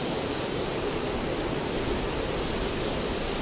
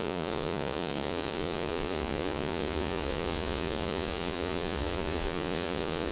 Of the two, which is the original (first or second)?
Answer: first